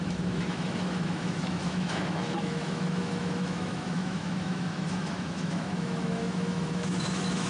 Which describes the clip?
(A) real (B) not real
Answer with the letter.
B